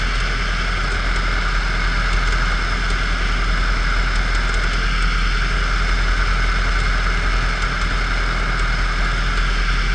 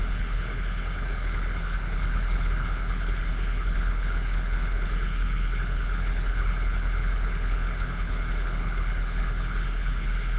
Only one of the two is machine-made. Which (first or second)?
second